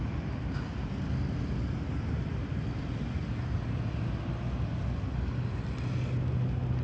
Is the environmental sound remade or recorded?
recorded